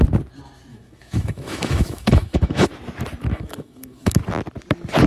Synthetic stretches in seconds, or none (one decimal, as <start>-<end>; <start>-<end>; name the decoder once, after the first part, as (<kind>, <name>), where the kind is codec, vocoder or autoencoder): 0.7-2.7 (autoencoder, DAC-VAE); 3.3-4.2